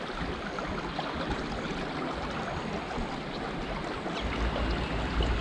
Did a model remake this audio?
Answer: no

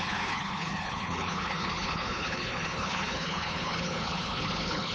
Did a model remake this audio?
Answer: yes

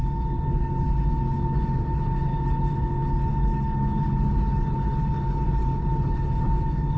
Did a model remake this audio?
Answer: yes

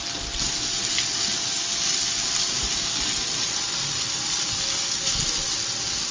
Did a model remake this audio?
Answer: no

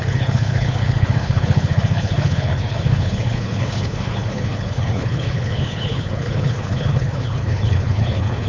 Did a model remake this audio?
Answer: yes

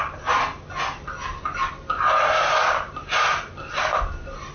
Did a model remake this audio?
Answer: no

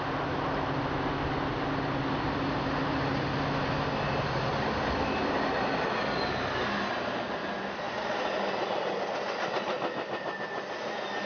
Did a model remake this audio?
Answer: no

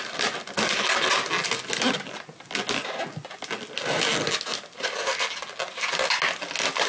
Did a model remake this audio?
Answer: no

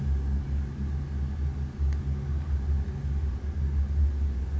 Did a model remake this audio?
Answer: no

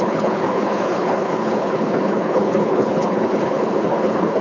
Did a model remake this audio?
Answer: yes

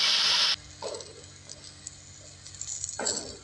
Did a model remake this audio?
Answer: no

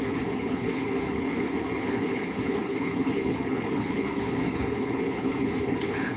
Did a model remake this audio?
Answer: yes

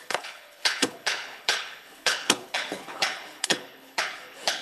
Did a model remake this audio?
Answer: yes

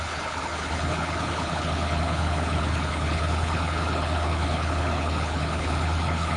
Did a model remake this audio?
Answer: yes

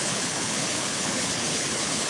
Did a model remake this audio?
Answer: yes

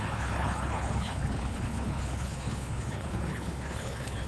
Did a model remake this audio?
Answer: yes